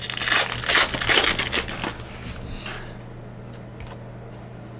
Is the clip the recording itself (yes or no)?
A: yes